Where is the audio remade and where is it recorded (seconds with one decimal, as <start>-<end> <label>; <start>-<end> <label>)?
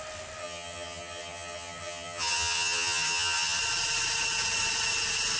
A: 0.0-0.4 recorded; 0.4-3.6 remade; 3.6-5.4 recorded